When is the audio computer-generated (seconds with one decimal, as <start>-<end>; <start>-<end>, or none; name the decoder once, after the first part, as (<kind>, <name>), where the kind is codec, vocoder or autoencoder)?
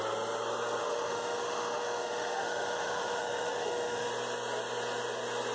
0.8-4.1 (autoencoder, DAC-VAE)